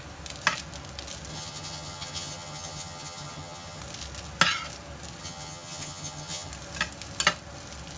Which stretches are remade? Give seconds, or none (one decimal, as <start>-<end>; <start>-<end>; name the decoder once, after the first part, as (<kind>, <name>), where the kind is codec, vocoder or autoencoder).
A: 1.3-3.8 (vocoder, HiFi-GAN); 5.2-6.5